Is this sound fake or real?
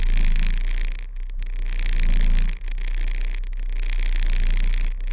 real